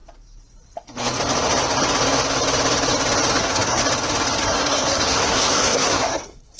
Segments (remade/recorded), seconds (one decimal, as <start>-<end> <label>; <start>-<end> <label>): 0.0-3.4 recorded; 3.4-3.8 remade; 3.8-4.4 recorded; 4.4-6.6 remade